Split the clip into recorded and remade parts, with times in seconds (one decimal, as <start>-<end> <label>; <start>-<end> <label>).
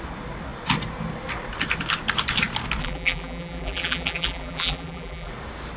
0.0-2.8 recorded; 2.8-5.3 remade; 5.3-5.8 recorded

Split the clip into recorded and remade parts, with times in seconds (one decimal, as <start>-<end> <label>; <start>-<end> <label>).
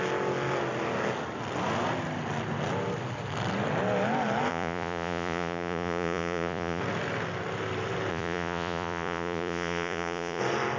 0.0-4.5 recorded; 4.5-6.8 remade; 6.8-8.1 recorded; 8.1-10.4 remade; 10.4-10.8 recorded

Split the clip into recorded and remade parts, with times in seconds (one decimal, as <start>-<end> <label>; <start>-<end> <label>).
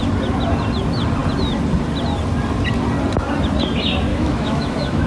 0.0-4.1 recorded; 4.1-5.1 remade